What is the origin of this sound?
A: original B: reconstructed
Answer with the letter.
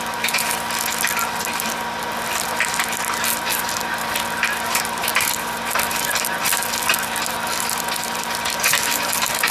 A